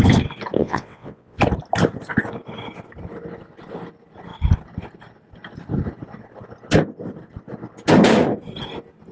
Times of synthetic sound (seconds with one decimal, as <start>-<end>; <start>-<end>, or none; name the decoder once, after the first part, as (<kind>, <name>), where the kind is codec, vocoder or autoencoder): 0.6-1.4 (vocoder, WaveNeXt)